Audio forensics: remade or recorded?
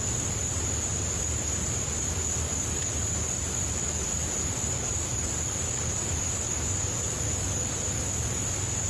recorded